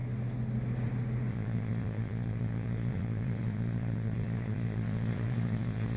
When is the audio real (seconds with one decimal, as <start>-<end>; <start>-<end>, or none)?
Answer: 0.0-1.3